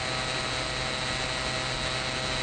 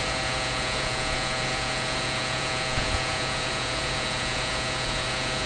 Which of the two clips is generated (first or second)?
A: second